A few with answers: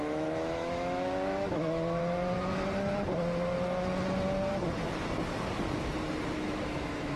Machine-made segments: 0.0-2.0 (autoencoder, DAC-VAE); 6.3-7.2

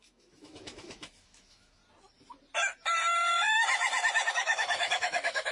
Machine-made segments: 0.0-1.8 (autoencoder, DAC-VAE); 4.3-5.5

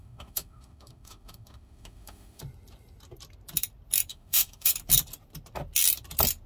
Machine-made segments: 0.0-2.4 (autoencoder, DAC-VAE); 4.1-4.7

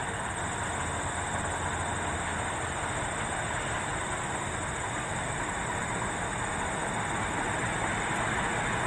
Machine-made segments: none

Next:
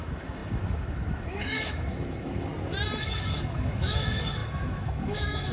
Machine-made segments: 0.0-2.5 (autoencoder, DAC-VAE); 3.0-5.5

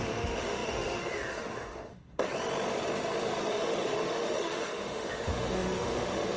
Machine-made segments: 0.0-2.3 (autoencoder, DAC-VAE); 3.5-6.4